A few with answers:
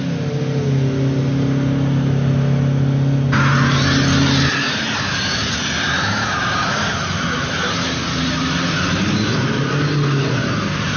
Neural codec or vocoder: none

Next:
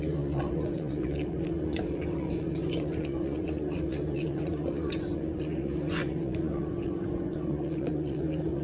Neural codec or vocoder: vocoder, Vocos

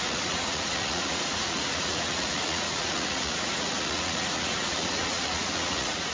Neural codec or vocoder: vocoder, Vocos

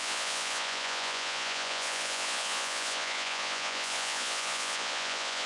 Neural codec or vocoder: vocoder, Vocos